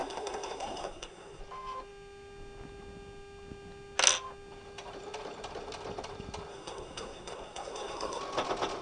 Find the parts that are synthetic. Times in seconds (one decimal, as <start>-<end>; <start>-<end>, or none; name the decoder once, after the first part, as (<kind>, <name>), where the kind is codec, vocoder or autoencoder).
0.0-1.4 (codec, SNAC); 6.5-8.2